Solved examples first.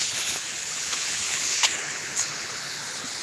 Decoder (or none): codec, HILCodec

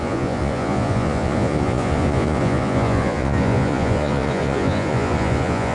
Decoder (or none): vocoder, Vocos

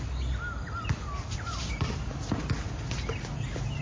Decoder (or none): none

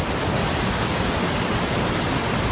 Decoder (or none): vocoder, BigVGAN v2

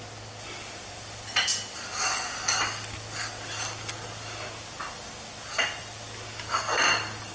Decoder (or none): none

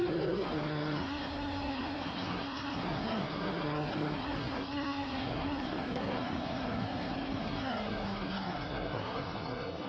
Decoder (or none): codec, SNAC